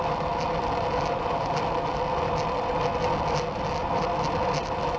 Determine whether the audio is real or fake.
real